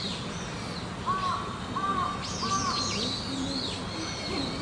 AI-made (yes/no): no